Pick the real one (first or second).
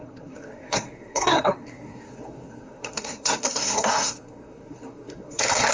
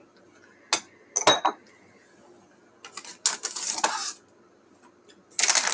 second